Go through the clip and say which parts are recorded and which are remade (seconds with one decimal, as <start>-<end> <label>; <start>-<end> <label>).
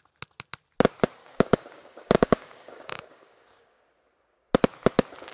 0.0-1.2 recorded; 1.2-3.8 remade; 3.8-5.3 recorded